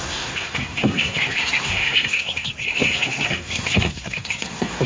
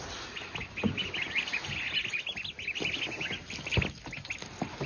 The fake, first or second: first